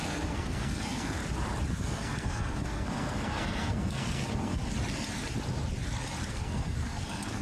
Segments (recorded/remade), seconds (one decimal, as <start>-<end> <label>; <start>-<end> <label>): 0.0-1.2 remade; 1.2-1.7 recorded; 1.7-4.6 remade; 4.6-6.3 recorded; 6.3-7.4 remade